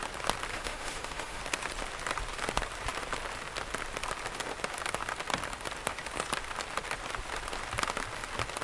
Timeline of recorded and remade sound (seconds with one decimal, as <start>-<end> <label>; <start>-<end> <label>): 0.0-0.5 recorded; 0.5-1.4 remade; 1.4-8.6 recorded